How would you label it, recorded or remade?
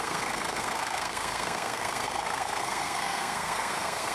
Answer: remade